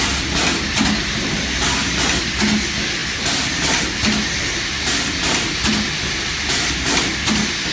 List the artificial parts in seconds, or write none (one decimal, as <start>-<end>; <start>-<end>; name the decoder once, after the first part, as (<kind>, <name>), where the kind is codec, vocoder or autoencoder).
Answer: none